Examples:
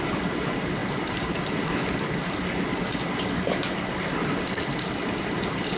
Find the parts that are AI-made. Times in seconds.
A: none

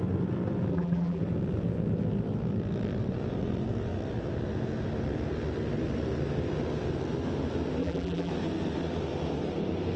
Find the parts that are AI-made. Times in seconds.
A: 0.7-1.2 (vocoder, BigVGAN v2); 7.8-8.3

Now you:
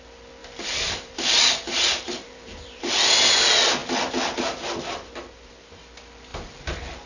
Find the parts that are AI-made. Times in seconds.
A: 0.4-2.8 (vocoder, BigVGAN v2); 6.3-7.1

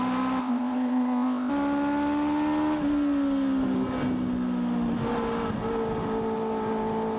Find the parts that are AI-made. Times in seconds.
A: 0.4-1.5 (codec, ZipCodec)